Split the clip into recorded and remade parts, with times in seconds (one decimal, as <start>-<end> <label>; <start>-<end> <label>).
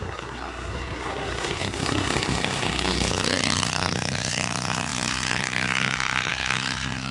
0.0-7.1 remade